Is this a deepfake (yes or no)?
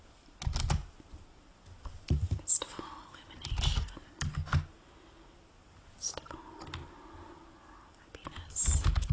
no